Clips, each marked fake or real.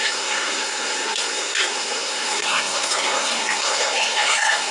fake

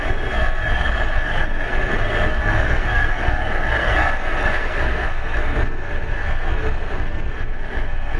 fake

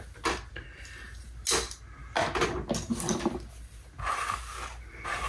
real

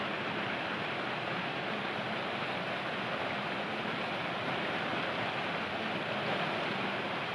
real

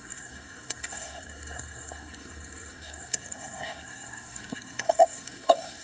fake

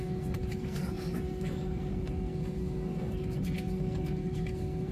fake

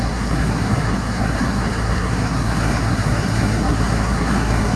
fake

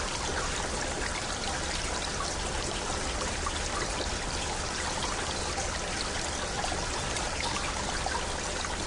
real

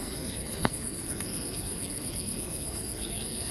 fake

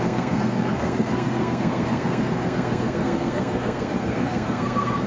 fake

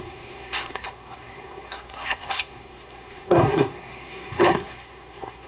fake